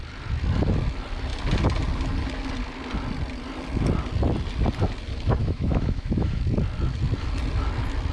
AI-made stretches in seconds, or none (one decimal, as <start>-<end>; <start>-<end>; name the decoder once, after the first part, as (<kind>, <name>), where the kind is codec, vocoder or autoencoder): 5.4-6.4 (autoencoder, DAC-VAE)

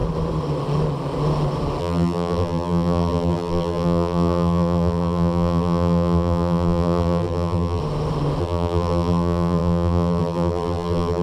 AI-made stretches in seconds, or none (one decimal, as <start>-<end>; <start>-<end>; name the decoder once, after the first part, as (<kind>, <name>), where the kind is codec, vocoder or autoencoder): 1.8-7.8 (vocoder, BigVGAN v2); 8.4-11.2

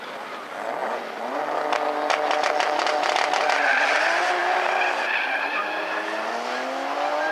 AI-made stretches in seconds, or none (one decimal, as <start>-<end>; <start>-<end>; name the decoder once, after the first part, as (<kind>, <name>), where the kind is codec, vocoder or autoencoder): none